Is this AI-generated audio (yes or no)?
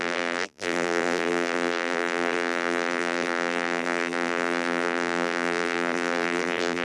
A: yes